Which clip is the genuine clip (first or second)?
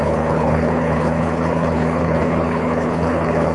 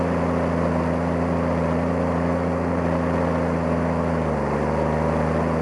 second